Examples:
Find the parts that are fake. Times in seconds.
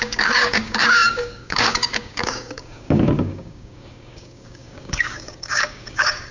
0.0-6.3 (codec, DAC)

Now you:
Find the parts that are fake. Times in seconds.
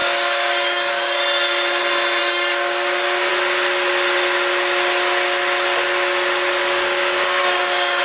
0.0-1.8 (codec, DAC); 2.2-3.3; 6.6-8.0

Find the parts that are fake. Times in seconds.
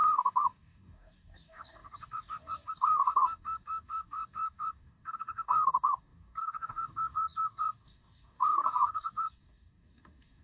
0.0-10.4 (codec, DAC)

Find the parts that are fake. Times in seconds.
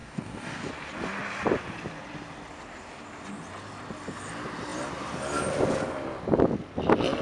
0.0-0.7 (codec, DAC)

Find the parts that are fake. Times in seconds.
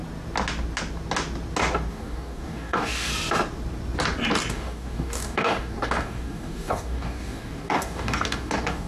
1.9-3.1 (codec, DAC); 4.5-8.9